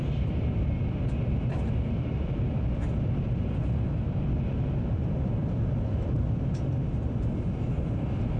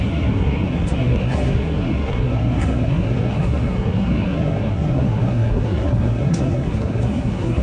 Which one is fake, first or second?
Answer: second